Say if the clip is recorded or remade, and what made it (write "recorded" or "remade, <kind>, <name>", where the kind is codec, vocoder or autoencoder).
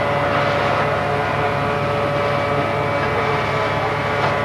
recorded